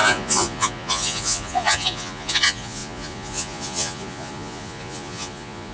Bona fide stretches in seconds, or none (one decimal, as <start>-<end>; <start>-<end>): none